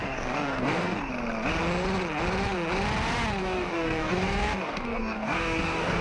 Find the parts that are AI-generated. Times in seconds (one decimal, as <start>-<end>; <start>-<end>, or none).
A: 0.0-1.1; 3.4-6.0